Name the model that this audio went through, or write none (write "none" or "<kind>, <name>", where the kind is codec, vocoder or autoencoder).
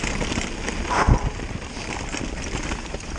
none